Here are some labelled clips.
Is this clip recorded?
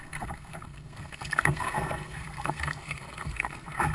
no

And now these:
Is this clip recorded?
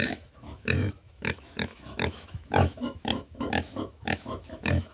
no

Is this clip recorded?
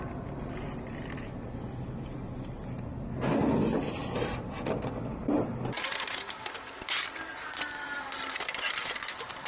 yes